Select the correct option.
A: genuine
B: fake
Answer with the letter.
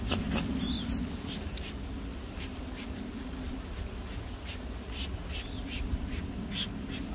A